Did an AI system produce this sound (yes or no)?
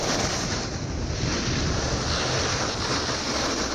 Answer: no